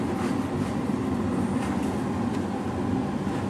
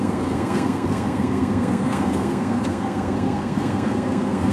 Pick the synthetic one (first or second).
second